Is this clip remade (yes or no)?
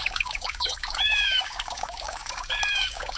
yes